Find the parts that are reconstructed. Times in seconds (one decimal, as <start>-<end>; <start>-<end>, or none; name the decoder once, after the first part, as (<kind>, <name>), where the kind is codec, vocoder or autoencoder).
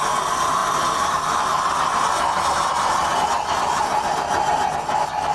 none